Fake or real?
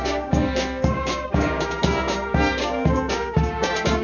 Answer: fake